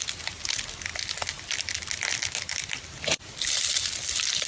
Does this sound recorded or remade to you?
recorded